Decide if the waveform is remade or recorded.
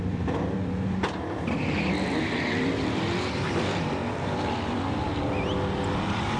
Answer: remade